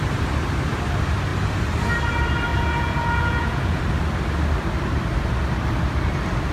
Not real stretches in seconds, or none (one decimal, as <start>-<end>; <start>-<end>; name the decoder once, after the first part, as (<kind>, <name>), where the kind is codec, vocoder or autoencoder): 2.5-3.8 (vocoder, Vocos)